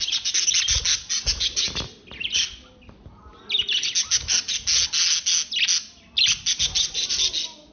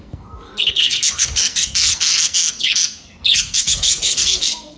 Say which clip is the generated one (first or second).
second